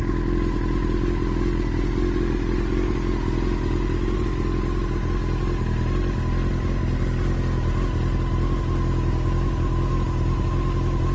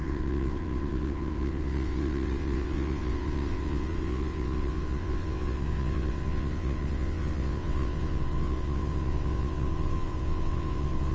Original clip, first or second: first